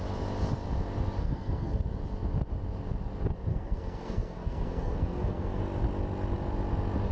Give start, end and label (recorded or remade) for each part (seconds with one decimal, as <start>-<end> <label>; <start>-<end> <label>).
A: 0.0-1.2 recorded; 1.2-1.8 remade; 1.8-3.5 recorded; 3.5-5.6 remade; 5.6-7.1 recorded